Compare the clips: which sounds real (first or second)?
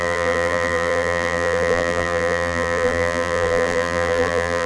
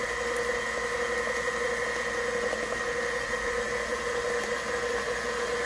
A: second